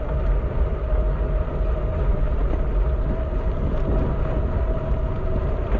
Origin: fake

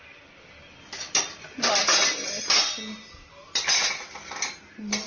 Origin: real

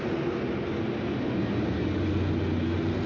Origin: real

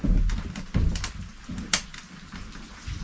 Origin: real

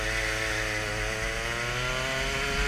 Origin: real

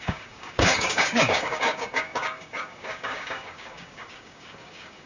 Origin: fake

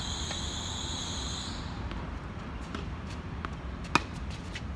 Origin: real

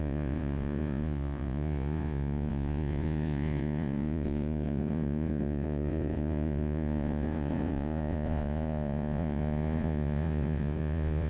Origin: fake